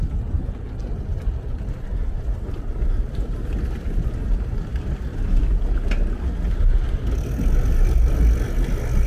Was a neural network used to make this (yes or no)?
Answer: no